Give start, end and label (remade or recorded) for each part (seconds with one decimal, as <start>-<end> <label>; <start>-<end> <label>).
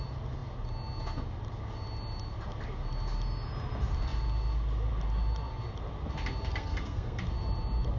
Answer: 0.0-6.5 recorded; 6.5-7.2 remade; 7.2-8.0 recorded